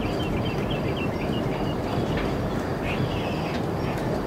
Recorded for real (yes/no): yes